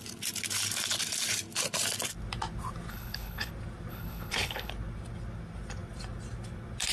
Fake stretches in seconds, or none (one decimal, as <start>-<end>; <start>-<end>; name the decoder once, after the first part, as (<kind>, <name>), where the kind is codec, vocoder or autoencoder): 2.9-3.5 (codec, HILCodec); 3.9-4.7